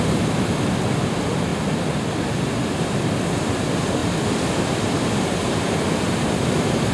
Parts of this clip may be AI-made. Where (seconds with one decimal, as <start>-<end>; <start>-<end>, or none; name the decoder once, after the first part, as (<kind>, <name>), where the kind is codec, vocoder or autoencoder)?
0.0-6.9 (vocoder, BigVGAN v2)